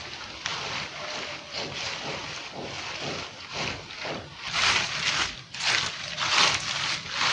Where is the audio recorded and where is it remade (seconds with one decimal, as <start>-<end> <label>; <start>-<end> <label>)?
0.0-7.3 recorded